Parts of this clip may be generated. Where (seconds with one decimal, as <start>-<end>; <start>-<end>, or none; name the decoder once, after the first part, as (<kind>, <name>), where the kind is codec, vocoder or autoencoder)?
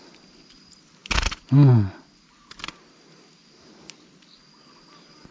none